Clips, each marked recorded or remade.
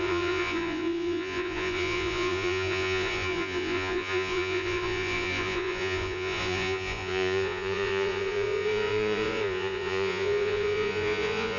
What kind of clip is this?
remade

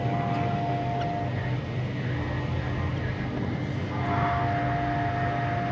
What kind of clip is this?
recorded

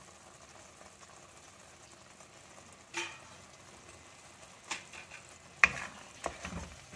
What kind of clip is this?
recorded